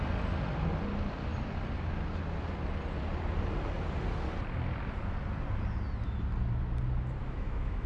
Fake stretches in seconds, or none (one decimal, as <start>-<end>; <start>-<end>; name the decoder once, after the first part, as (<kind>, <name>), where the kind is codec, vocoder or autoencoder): 7.2-7.9 (autoencoder, DAC-VAE)

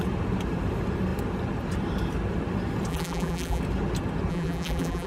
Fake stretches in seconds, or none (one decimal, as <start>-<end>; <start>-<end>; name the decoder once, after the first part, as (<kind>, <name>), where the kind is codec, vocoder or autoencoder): 2.9-3.6 (vocoder, BigVGAN v2); 4.3-5.1